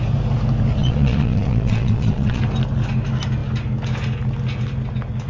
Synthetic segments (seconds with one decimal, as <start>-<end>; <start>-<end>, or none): 0.8-2.4